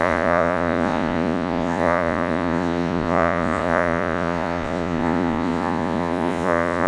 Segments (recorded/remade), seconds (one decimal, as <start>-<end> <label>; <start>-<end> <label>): 0.0-6.9 remade